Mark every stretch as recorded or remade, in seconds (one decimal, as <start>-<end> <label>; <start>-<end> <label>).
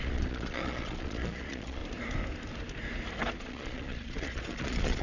0.0-1.8 remade; 1.8-3.4 recorded; 3.4-5.0 remade